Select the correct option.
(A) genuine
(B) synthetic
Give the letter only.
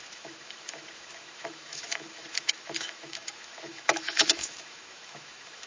B